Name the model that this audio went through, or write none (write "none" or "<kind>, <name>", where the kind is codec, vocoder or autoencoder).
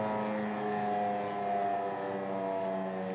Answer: none